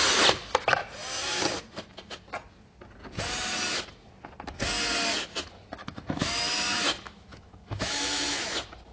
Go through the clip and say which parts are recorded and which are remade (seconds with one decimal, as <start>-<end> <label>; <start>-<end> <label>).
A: 0.0-5.8 recorded; 5.8-8.4 remade; 8.4-8.9 recorded